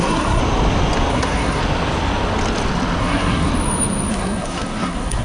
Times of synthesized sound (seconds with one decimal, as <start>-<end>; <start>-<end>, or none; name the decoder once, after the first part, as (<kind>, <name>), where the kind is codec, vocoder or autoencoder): 0.0-0.4 (codec, SNAC); 1.1-1.6; 3.0-3.5; 4.1-5.2